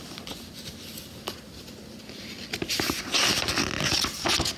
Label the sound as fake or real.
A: real